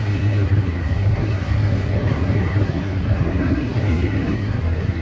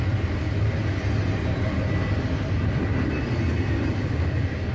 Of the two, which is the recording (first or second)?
second